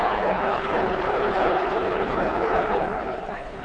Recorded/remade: remade